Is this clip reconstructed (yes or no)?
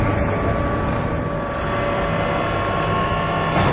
no